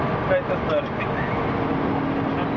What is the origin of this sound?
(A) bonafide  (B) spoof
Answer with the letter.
A